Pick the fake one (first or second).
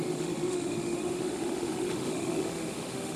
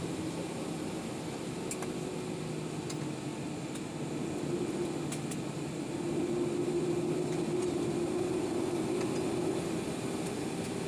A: first